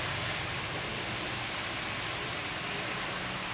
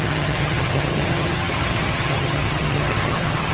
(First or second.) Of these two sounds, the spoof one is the second